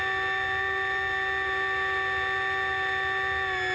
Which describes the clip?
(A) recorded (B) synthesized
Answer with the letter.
A